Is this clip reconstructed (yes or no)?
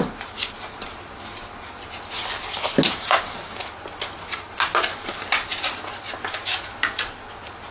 no